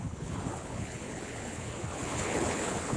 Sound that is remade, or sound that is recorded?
remade